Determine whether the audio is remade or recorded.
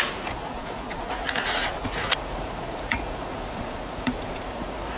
remade